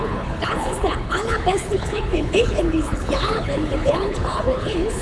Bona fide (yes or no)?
no